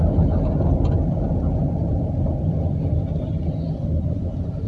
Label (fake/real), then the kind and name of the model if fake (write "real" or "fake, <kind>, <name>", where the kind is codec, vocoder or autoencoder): real